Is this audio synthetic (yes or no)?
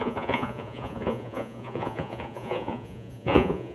yes